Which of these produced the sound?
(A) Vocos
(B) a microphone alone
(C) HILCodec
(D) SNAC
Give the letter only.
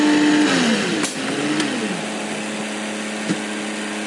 B